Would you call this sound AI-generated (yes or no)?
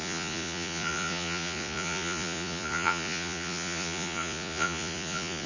yes